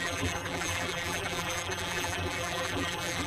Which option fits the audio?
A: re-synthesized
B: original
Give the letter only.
A